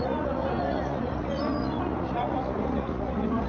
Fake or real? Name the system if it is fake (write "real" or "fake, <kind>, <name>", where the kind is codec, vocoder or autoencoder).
fake, vocoder, Vocos